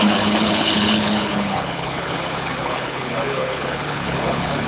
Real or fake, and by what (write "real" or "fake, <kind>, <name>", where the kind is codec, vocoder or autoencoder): fake, codec, HILCodec